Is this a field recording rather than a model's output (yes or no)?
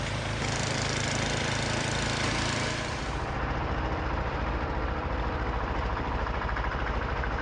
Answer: yes